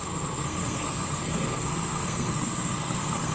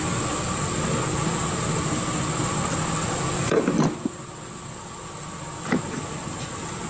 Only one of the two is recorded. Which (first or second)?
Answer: second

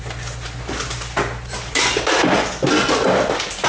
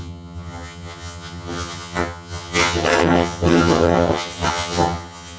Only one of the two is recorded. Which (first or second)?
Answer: first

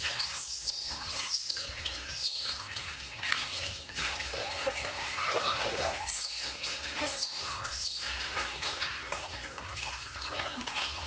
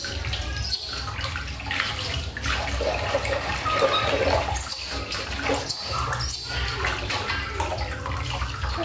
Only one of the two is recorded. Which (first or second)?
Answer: second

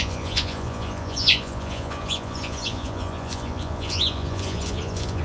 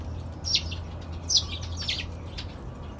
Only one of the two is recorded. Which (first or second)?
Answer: second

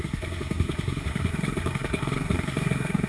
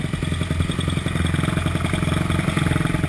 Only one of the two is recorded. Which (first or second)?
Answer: second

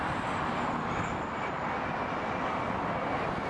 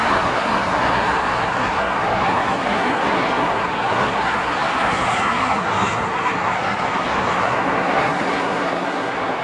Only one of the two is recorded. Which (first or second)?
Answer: first